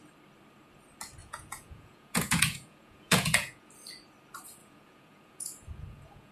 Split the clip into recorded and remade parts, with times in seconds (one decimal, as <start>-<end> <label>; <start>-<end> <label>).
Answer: 0.0-1.2 recorded; 1.2-3.7 remade; 3.7-4.6 recorded; 4.6-6.3 remade